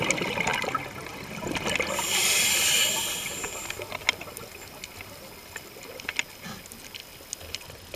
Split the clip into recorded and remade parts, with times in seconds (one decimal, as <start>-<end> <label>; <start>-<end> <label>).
0.0-8.0 recorded